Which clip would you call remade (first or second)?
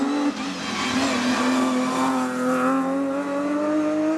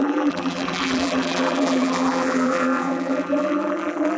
second